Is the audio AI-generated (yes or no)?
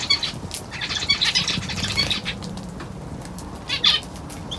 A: no